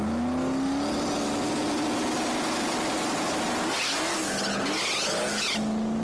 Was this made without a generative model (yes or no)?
yes